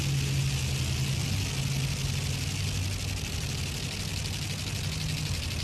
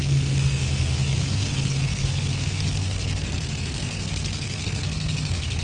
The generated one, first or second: second